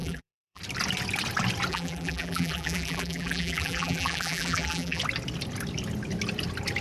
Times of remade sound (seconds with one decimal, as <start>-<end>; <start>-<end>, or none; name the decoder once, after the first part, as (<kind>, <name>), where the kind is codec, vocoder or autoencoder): 0.0-0.6 (vocoder, BigVGAN v2); 1.7-5.0